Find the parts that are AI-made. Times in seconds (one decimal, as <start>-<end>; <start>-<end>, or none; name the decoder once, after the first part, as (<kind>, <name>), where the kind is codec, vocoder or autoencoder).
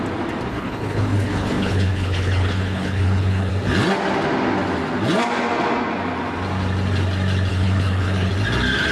0.5-3.5 (codec, HILCodec); 7.5-8.3